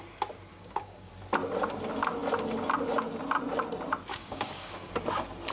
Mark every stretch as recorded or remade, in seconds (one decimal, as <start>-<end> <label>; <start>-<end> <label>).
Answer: 0.0-0.5 recorded; 0.5-1.1 remade; 1.1-4.1 recorded; 4.1-4.9 remade; 4.9-5.5 recorded